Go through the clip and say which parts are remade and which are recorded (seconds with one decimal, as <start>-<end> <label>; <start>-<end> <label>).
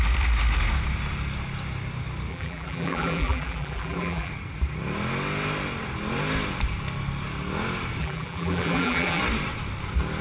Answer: 0.0-2.3 recorded; 2.3-4.3 remade; 4.3-8.0 recorded; 8.0-9.2 remade; 9.2-10.2 recorded